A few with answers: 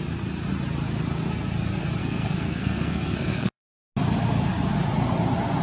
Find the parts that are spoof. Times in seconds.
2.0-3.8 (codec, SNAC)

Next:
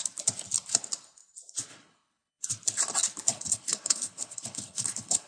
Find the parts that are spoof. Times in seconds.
1.7-2.5 (codec, HILCodec); 3.3-5.3